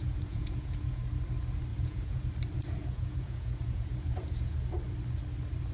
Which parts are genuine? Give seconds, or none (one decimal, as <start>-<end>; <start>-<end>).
1.0-1.7; 2.3-2.8; 4.7-5.7